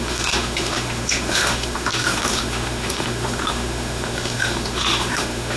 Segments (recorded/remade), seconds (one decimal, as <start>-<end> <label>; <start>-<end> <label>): 0.0-5.6 remade